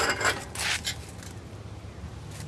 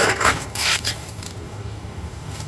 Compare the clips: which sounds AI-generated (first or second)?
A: second